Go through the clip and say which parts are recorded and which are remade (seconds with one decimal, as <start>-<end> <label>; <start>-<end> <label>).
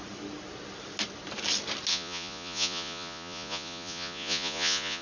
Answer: 0.0-1.9 recorded; 1.9-5.0 remade